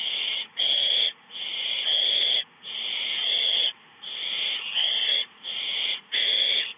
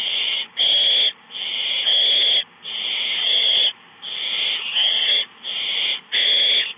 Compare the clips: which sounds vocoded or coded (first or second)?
first